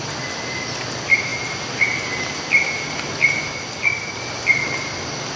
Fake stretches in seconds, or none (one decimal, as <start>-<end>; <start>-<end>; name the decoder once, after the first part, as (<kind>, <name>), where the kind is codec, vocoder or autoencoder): none